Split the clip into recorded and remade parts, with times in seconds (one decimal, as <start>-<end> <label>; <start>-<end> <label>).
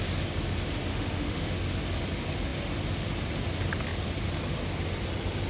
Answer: 0.0-0.9 recorded; 0.9-1.6 remade; 1.6-5.5 recorded